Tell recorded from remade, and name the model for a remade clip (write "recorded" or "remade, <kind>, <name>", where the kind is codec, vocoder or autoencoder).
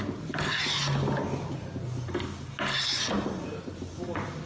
recorded